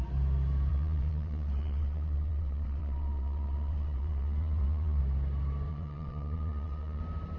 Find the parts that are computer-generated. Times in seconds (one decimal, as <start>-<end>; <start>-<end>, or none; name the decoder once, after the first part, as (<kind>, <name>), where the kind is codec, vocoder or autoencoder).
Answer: 0.7-5.0 (vocoder, WaveNeXt); 5.7-7.0